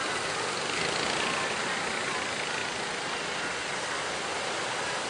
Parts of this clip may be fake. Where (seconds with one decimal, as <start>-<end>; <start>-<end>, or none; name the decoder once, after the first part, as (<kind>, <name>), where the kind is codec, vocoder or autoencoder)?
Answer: none

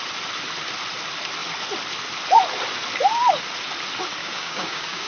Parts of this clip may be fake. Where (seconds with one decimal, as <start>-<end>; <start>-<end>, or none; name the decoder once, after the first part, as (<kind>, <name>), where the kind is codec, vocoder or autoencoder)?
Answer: 4.2-5.1 (codec, DAC)

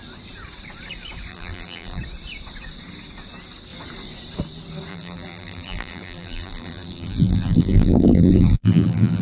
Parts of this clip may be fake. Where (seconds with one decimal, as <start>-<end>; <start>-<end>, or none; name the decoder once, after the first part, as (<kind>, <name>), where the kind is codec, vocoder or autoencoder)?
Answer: 1.3-2.0 (vocoder, BigVGAN v2); 4.9-9.2

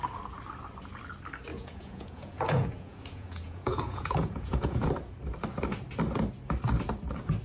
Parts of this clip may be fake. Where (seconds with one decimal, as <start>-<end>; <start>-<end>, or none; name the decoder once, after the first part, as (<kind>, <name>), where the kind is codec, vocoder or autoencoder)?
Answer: 1.5-4.9 (vocoder, Vocos)

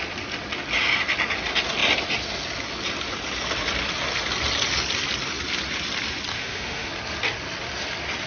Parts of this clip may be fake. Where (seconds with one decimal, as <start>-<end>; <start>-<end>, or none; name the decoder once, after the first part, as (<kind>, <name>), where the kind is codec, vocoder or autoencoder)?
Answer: 6.3-6.9 (autoencoder, DAC-VAE)

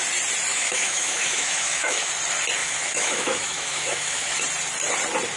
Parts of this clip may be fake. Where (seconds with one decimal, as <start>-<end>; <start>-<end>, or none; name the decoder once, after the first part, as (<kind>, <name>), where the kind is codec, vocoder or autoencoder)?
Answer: 0.5-2.1 (autoencoder, DAC-VAE); 2.6-4.4

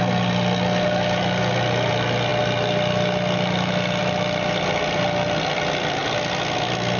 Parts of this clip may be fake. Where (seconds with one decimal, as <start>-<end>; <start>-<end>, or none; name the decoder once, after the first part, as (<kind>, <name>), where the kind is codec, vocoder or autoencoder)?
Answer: none